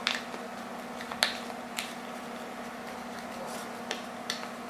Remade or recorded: recorded